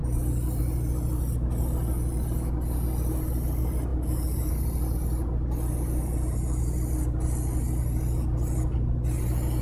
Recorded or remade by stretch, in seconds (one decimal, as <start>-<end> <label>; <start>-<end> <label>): 0.0-9.6 recorded